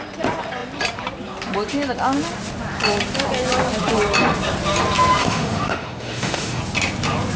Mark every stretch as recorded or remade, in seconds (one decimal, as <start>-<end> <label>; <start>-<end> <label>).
0.0-5.2 recorded; 5.2-6.6 remade; 6.6-7.4 recorded